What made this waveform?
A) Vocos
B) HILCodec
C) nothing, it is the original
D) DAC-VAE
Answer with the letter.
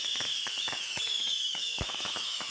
D